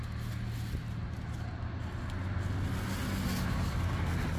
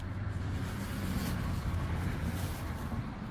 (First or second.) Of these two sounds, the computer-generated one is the second